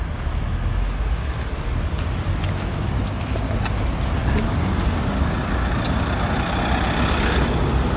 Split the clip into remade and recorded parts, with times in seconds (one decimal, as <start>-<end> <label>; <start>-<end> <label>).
0.0-4.2 recorded; 4.2-5.0 remade; 5.0-8.0 recorded